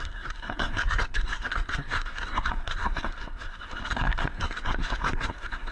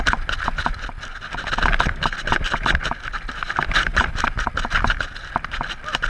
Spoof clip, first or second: first